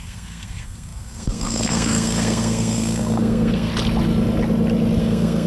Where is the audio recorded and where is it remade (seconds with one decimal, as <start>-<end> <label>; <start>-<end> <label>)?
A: 0.0-3.7 remade; 3.7-5.0 recorded; 5.0-5.5 remade